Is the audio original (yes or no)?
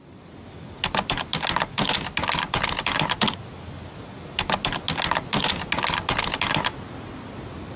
yes